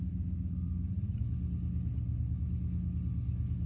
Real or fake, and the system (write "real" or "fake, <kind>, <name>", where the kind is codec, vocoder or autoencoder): real